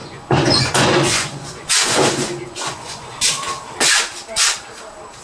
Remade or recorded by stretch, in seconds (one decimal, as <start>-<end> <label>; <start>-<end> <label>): 0.0-3.1 remade; 3.1-5.2 recorded